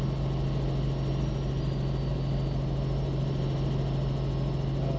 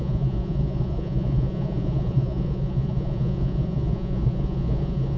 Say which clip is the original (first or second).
first